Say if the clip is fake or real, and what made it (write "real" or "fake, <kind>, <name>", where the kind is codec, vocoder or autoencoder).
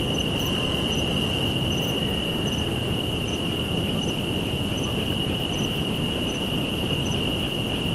real